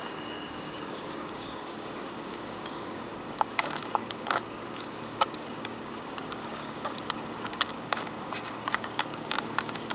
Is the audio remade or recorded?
remade